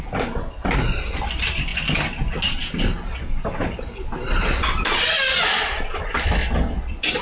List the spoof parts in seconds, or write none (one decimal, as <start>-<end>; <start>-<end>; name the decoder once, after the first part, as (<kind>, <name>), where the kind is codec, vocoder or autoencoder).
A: none